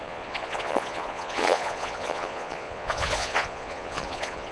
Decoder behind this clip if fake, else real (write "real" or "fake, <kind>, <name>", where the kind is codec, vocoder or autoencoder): fake, vocoder, Vocos